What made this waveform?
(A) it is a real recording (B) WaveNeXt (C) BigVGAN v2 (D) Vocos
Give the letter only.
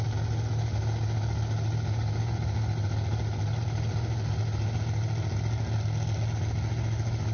A